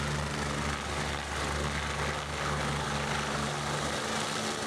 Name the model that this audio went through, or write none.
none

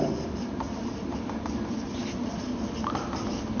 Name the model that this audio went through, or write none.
vocoder, BigVGAN v2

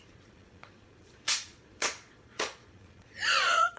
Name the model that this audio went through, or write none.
vocoder, Vocos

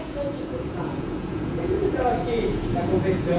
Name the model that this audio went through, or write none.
vocoder, Vocos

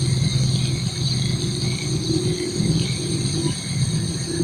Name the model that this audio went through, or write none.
none